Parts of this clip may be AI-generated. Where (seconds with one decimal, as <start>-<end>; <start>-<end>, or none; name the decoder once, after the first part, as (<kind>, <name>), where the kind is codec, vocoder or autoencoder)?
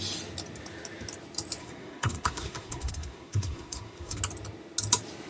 1.6-4.2 (codec, SNAC)